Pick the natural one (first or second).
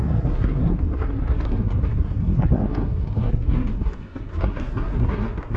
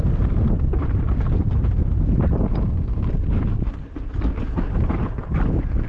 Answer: second